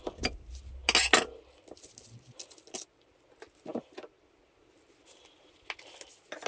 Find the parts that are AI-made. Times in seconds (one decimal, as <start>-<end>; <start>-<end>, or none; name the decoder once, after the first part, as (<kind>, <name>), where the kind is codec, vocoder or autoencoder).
none